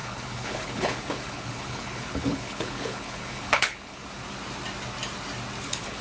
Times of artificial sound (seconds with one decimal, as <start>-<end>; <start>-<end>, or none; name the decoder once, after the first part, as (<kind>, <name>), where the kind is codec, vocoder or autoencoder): 0.0-4.0 (codec, HILCodec); 5.6-6.0